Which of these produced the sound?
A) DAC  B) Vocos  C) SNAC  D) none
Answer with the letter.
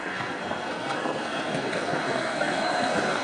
C